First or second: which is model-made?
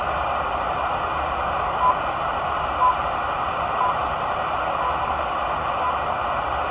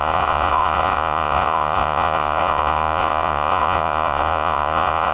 second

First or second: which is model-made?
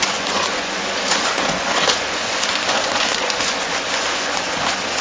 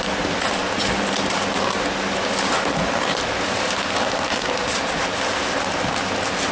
first